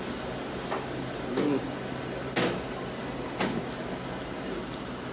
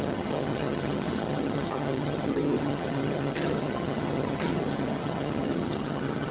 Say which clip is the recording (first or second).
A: first